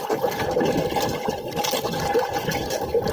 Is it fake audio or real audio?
real